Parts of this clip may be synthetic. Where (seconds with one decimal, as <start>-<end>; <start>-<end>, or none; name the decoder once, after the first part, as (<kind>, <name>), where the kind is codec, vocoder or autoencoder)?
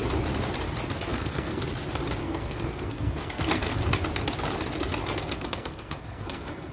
1.1-1.6 (codec, SNAC); 2.2-3.8; 5.0-6.7